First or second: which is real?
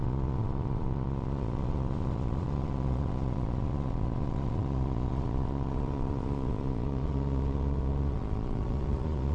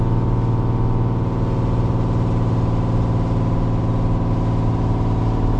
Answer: second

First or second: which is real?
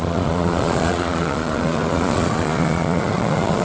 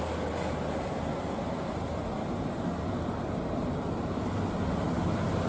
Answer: second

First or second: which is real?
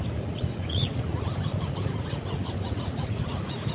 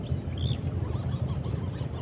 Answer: second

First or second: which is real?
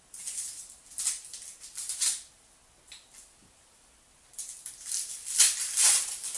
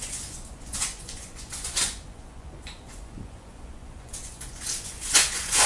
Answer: first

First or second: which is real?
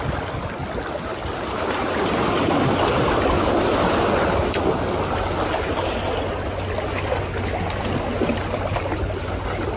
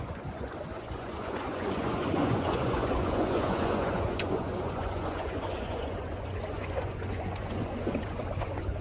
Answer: first